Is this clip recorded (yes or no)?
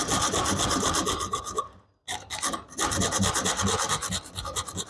yes